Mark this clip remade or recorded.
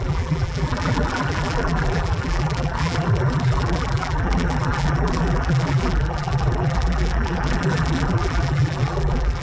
remade